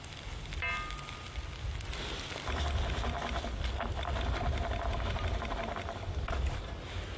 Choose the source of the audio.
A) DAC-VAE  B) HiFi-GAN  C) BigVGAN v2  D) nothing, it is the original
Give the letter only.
D